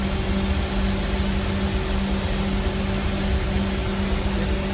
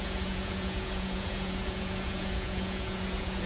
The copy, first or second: second